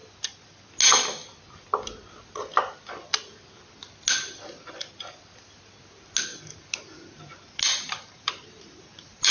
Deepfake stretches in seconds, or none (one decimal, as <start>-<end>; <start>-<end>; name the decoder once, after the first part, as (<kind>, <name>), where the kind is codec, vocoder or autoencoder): 6.3-9.3 (vocoder, BigVGAN v2)